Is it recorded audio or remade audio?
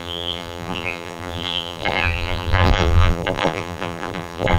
remade